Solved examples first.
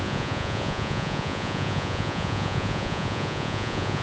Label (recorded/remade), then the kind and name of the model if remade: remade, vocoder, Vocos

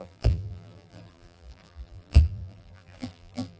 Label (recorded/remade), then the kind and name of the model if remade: remade, vocoder, BigVGAN v2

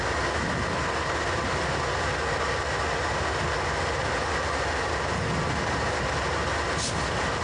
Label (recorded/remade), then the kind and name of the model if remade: recorded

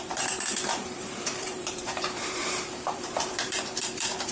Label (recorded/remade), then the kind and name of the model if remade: remade, vocoder, BigVGAN v2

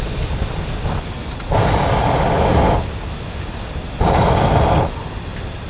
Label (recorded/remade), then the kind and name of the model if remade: recorded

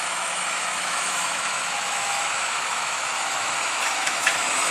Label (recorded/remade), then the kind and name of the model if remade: remade, autoencoder, DAC-VAE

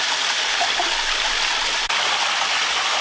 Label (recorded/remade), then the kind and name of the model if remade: recorded